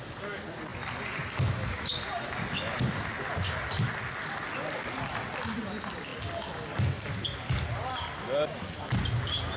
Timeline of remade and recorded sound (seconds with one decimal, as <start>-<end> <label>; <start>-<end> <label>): 0.0-9.6 recorded

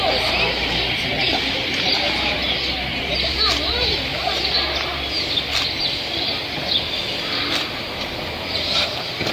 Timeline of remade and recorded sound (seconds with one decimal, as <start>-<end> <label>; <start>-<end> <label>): 0.0-9.3 recorded

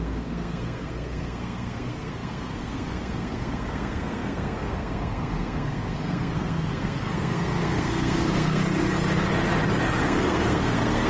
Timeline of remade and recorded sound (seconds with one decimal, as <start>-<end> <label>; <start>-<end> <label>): 0.0-8.6 remade; 8.6-10.0 recorded; 10.0-11.1 remade

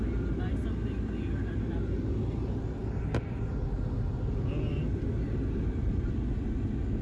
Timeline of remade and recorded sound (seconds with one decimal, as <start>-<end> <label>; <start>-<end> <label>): 0.0-7.0 recorded

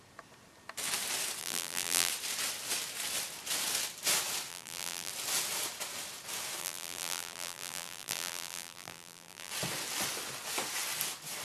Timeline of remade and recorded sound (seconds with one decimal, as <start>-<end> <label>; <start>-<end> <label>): 0.0-1.4 recorded; 1.4-2.1 remade; 2.1-4.5 recorded; 4.5-5.1 remade; 5.1-6.6 recorded; 6.6-9.5 remade; 9.5-11.4 recorded

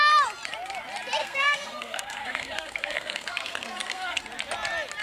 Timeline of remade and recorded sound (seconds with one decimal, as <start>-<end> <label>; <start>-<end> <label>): 0.0-1.2 recorded; 1.2-4.2 remade; 4.2-5.0 recorded

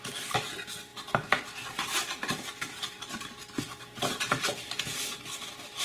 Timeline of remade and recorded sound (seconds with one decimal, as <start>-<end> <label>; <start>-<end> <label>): 0.0-5.8 recorded